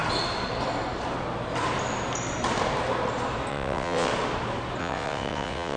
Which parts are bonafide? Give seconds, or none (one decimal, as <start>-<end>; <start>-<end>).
0.0-3.5; 4.1-4.8